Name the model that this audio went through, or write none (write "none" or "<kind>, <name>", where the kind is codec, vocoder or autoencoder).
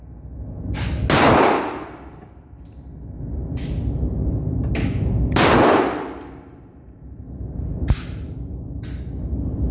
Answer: none